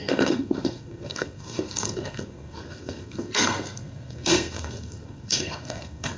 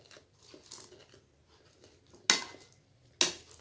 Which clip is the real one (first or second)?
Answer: second